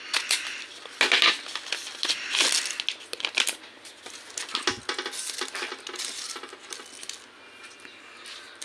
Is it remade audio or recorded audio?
recorded